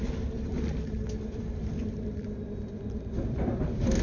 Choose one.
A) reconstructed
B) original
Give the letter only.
B